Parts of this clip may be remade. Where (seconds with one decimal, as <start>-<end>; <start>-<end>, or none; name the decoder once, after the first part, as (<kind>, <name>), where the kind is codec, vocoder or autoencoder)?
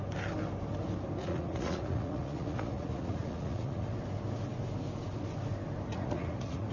1.2-3.9 (vocoder, Vocos); 5.9-6.7